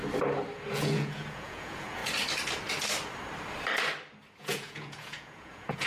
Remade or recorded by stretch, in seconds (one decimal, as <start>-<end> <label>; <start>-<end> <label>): 0.0-0.7 recorded; 0.7-2.0 remade; 2.0-4.4 recorded; 4.4-5.9 remade

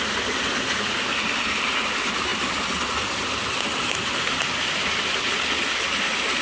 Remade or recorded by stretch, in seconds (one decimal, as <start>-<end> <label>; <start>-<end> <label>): 0.0-6.4 recorded

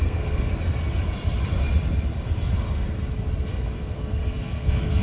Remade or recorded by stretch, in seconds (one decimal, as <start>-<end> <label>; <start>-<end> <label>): 0.0-0.5 remade; 0.5-3.5 recorded; 3.5-5.0 remade

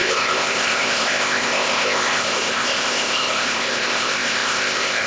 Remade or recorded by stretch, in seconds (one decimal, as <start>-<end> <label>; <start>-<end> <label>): 0.0-5.1 remade